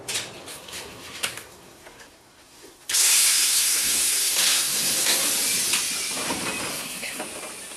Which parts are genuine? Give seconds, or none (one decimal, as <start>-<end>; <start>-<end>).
0.0-0.5; 5.2-6.7; 7.2-7.8